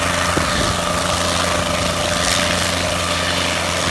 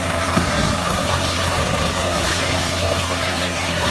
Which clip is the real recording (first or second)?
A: first